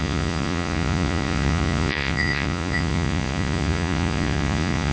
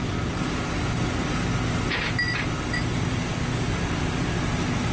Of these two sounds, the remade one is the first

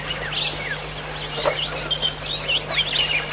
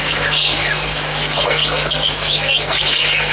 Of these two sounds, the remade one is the second